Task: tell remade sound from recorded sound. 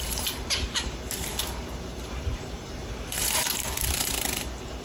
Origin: remade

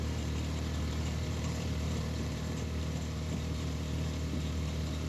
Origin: remade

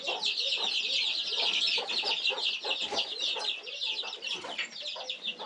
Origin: recorded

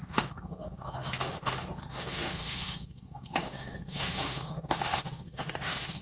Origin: remade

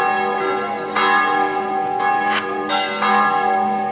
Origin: recorded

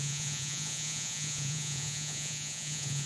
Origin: remade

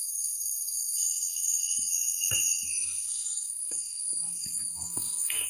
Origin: remade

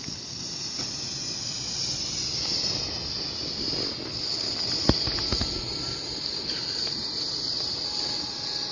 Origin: recorded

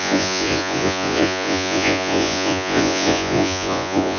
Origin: remade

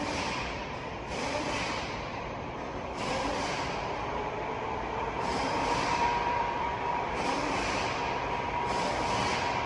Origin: remade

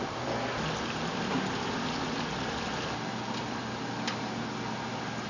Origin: recorded